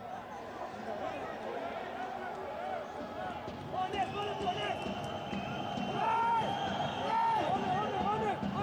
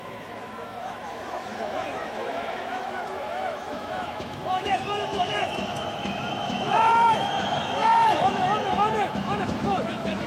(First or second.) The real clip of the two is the first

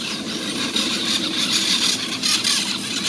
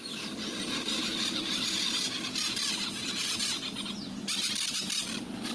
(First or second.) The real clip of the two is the second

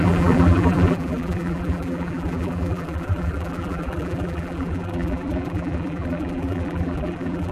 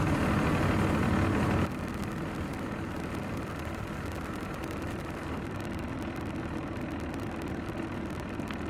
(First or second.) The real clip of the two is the second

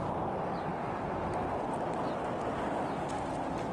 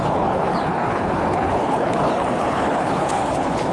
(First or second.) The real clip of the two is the first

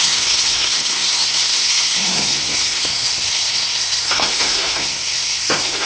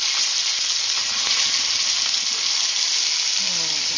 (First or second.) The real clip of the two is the second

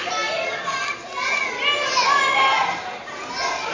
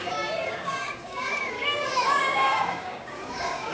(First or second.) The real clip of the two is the first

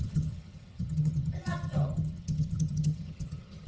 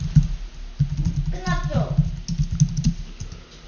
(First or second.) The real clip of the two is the second